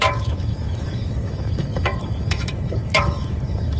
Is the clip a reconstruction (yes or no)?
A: yes